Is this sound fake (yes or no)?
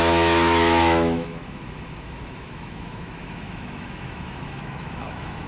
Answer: yes